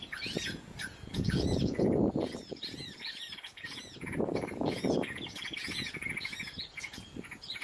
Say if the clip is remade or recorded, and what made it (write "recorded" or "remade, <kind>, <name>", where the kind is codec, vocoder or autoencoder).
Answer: remade, vocoder, Vocos